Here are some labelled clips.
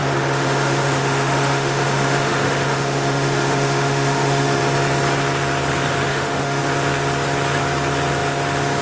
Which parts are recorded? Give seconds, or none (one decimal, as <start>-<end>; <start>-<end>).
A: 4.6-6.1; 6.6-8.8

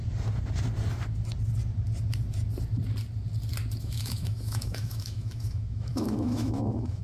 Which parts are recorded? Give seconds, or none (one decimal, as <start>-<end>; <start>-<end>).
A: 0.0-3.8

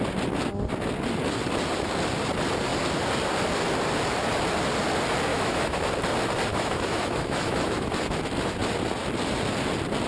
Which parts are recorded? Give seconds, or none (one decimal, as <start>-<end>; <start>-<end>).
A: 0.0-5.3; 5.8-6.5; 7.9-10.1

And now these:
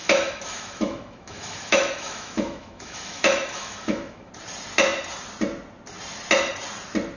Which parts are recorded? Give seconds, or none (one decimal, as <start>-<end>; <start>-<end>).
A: 4.3-7.2